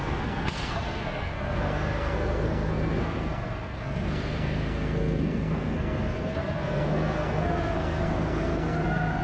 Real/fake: fake